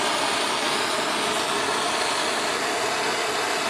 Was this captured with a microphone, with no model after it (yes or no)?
yes